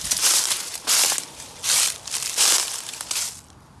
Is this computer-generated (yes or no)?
no